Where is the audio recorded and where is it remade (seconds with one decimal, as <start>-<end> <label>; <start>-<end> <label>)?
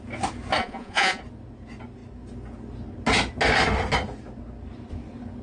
0.0-0.6 recorded; 0.6-1.2 remade; 1.2-5.4 recorded